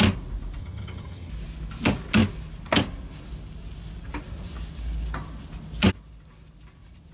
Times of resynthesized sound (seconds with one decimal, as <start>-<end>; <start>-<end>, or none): 0.6-1.3